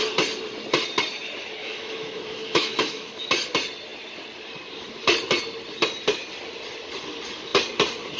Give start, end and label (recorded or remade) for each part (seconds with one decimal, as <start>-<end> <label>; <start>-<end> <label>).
0.0-1.6 recorded; 1.6-3.2 remade; 3.2-8.2 recorded